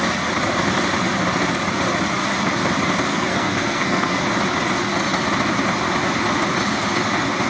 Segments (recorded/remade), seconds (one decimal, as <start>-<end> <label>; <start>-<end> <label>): 0.0-3.1 recorded; 3.1-4.2 remade; 4.2-7.5 recorded